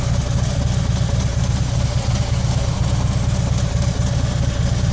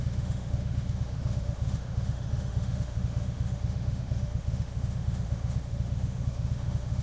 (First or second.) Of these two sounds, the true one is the first